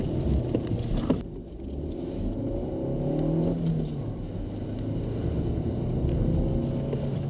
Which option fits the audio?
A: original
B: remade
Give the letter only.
A